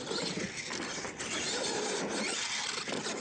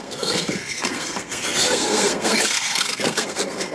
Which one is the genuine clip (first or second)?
first